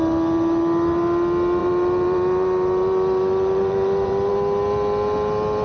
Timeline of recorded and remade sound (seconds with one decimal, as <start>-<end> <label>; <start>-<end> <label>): 0.0-1.6 recorded; 1.6-4.3 remade; 4.3-5.6 recorded